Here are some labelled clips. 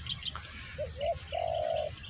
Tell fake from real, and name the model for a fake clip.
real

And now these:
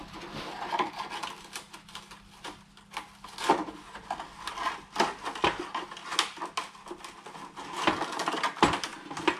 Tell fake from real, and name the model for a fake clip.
real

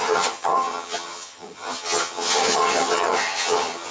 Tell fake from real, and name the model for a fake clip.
fake, vocoder, HiFi-GAN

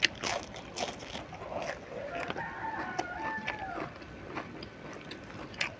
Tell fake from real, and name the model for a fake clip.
real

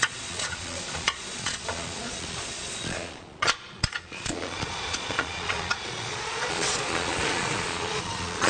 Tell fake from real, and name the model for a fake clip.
fake, vocoder, Vocos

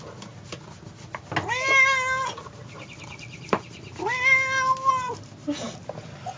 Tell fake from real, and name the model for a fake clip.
real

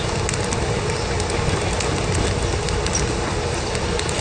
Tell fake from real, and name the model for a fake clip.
real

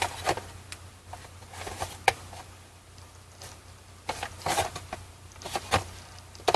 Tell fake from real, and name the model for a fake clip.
fake, vocoder, BigVGAN v2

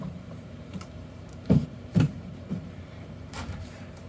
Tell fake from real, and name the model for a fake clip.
fake, vocoder, BigVGAN v2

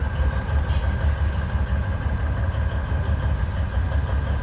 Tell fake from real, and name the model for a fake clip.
real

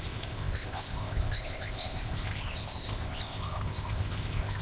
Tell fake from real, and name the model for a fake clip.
fake, codec, ZipCodec